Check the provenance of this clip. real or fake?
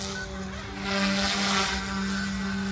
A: real